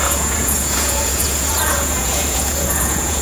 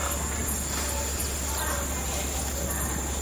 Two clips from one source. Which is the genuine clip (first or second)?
second